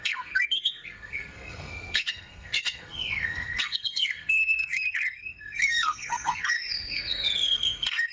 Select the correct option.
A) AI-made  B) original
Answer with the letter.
A